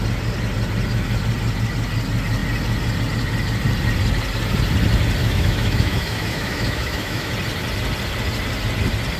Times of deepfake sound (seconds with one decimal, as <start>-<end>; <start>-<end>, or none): 5.2-7.3